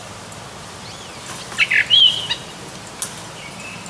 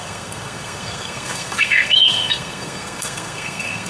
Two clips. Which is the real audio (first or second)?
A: first